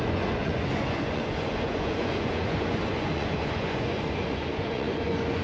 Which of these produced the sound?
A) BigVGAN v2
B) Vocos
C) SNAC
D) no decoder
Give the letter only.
B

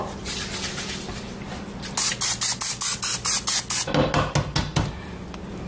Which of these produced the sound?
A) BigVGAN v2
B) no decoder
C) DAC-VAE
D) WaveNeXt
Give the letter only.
B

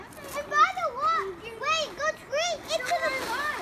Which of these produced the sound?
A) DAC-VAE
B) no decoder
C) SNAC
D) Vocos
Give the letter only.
B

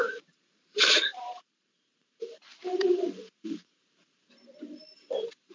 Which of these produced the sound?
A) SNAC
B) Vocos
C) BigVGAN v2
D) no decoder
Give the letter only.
C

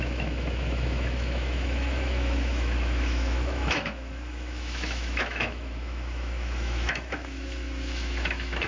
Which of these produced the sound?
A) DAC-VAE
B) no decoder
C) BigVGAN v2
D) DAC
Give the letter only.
A